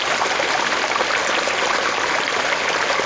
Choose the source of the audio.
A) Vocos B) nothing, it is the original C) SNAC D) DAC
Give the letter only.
B